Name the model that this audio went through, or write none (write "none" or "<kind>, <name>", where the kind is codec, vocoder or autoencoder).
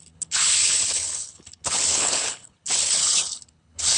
codec, HILCodec